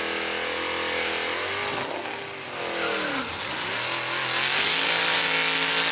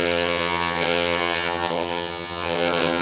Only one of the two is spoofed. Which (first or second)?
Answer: second